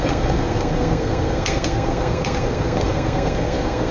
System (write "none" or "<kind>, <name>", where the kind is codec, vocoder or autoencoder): codec, SNAC